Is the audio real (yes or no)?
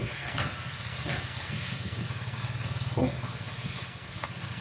no